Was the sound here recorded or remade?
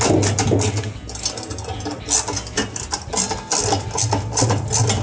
recorded